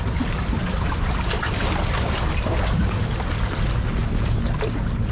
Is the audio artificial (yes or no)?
no